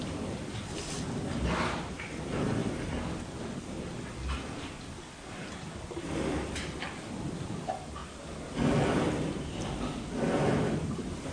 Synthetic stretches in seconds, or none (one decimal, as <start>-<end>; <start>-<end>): none